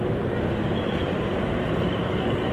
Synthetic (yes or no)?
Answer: no